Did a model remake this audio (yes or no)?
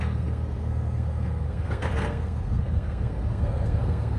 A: yes